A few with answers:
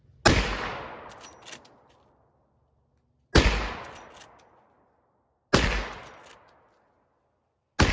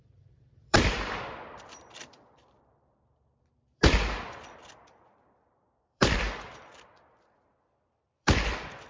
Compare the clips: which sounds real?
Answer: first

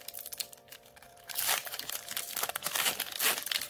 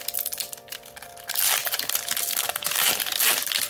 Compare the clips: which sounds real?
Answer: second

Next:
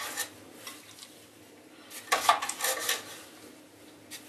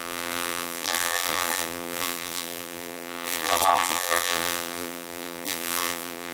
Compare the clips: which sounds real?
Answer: first